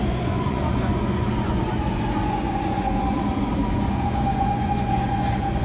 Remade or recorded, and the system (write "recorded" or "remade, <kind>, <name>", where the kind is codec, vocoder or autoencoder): remade, vocoder, Vocos